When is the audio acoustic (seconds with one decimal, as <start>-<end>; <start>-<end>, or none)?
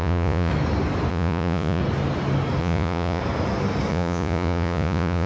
0.5-1.1; 1.8-2.6; 3.2-3.9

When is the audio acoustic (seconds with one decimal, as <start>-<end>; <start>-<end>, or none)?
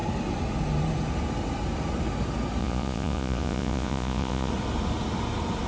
0.0-2.6; 4.5-5.7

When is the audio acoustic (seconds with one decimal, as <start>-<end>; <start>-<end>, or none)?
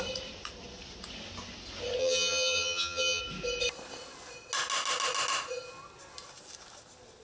0.0-2.0; 3.2-7.2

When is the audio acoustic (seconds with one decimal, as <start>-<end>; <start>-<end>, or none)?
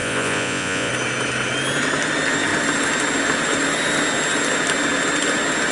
0.9-5.7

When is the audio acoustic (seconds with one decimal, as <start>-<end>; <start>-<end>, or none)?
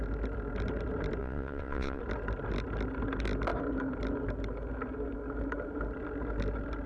0.0-1.2; 2.0-6.9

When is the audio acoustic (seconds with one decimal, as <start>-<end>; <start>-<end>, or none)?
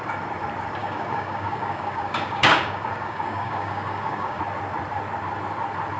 0.0-0.8; 4.4-6.0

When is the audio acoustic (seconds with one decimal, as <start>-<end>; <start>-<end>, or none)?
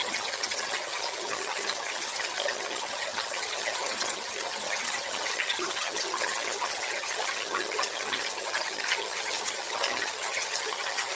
none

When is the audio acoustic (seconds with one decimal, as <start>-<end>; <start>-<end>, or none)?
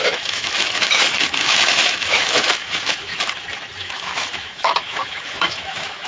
3.1-3.8